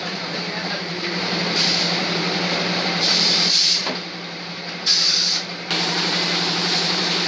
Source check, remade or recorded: remade